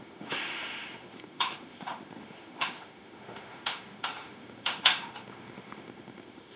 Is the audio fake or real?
fake